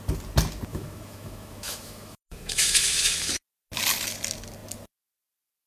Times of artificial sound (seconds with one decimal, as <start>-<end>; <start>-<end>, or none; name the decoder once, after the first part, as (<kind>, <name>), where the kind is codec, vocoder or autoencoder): 0.7-3.3 (autoencoder, DAC-VAE)